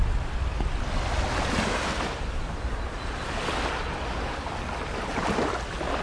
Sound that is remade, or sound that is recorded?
recorded